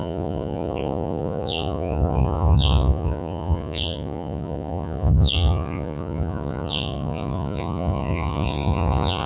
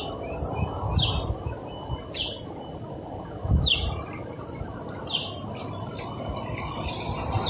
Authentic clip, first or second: second